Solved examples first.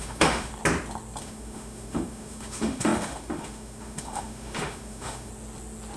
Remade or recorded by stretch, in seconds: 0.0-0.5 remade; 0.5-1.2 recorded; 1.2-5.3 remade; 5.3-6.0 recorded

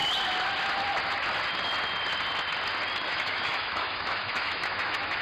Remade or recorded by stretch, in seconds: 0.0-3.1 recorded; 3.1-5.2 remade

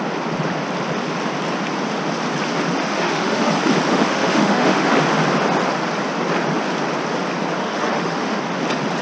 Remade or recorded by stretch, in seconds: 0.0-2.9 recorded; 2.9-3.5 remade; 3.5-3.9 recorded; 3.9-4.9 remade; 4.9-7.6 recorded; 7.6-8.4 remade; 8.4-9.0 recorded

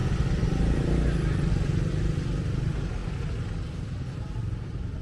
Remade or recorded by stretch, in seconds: 0.0-5.0 recorded

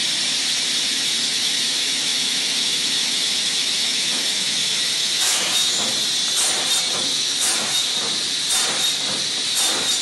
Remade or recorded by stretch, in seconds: 0.0-0.8 recorded; 0.8-5.9 remade; 5.9-6.9 recorded; 6.9-7.9 remade; 7.9-10.0 recorded

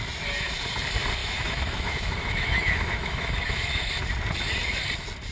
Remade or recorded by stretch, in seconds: 0.0-1.2 recorded; 1.2-4.0 remade; 4.0-5.3 recorded